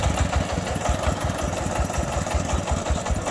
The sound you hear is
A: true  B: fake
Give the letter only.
A